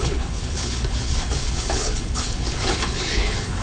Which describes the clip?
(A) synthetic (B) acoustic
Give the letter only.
A